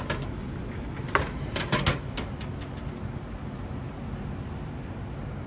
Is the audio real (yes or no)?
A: yes